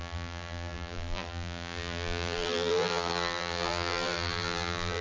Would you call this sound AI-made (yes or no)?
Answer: yes